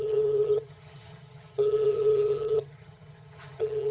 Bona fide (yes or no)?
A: no